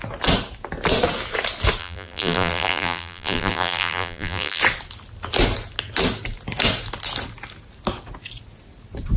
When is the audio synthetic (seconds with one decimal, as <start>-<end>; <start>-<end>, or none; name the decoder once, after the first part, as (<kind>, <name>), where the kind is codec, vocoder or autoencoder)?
1.8-4.6 (vocoder, BigVGAN v2)